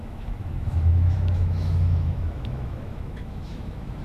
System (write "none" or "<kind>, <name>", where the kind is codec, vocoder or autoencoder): autoencoder, DAC-VAE